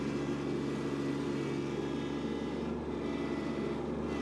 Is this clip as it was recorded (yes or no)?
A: yes